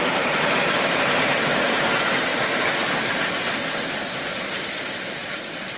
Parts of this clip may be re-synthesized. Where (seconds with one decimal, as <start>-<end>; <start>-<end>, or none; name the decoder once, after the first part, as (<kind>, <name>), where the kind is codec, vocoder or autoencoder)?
0.0-2.3 (vocoder, BigVGAN v2); 4.1-5.8